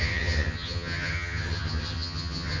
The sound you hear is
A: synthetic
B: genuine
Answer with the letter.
A